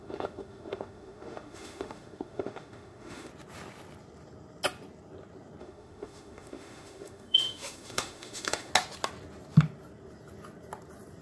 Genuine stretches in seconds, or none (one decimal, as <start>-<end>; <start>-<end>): 3.3-5.6; 8.7-11.2